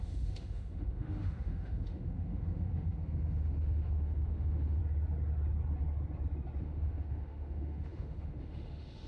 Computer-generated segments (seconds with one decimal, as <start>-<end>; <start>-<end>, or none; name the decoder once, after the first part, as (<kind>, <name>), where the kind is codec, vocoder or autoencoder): 0.0-4.8 (autoencoder, DAC-VAE); 6.6-9.1